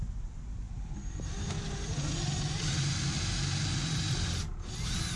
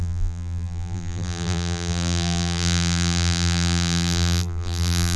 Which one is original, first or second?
first